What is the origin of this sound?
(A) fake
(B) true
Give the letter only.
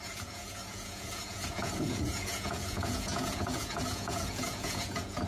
A